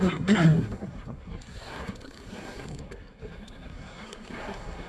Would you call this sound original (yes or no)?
no